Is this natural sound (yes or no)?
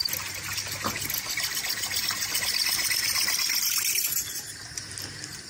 yes